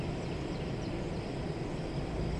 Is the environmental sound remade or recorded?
recorded